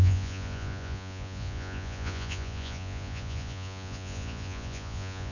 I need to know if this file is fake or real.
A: fake